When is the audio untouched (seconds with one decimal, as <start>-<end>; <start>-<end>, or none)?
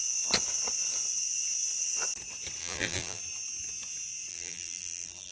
0.0-2.6; 3.2-4.3